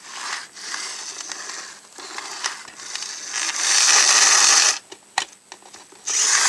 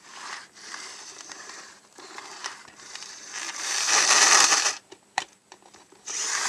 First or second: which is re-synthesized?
second